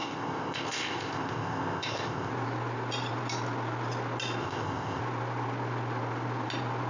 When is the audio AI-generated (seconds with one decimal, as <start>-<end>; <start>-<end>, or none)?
0.0-2.3; 4.4-5.0